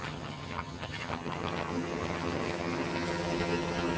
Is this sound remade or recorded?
remade